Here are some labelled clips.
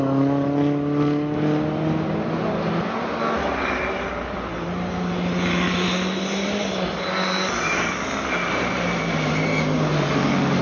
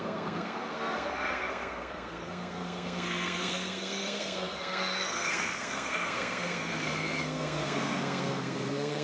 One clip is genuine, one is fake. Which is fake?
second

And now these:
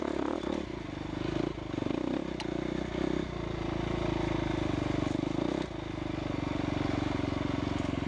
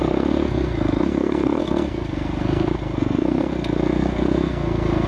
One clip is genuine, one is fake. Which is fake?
second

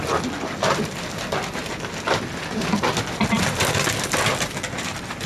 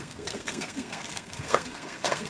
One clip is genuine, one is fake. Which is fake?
second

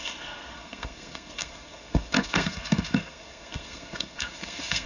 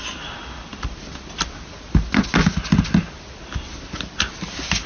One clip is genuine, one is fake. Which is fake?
first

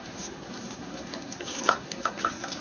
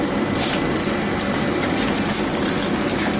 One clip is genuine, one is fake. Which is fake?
first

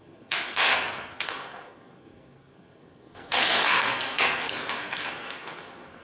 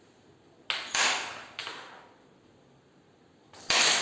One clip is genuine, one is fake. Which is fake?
first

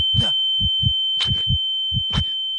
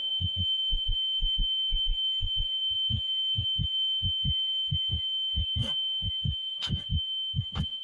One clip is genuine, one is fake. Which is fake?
second